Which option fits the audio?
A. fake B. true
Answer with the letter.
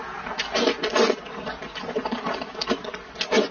B